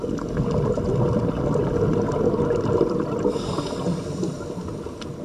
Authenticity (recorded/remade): recorded